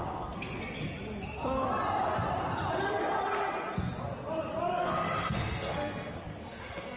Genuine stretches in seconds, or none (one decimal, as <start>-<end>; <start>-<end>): 0.6-4.8